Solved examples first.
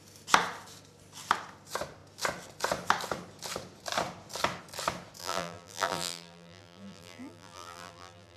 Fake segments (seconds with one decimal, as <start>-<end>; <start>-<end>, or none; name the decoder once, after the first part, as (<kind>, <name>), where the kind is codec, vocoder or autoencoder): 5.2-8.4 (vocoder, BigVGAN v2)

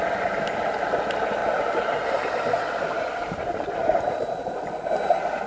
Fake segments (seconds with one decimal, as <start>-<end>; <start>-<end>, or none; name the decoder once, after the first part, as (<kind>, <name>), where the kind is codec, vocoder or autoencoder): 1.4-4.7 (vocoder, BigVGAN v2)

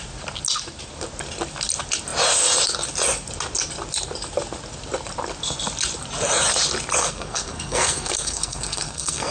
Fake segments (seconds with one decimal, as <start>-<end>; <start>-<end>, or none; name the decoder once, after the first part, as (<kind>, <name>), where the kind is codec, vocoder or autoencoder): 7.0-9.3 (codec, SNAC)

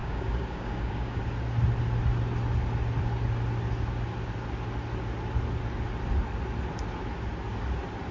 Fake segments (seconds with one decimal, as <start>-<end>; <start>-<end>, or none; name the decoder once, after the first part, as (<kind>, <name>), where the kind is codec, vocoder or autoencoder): 0.0-1.2 (codec, DAC)